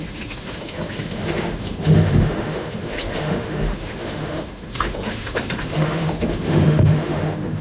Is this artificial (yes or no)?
yes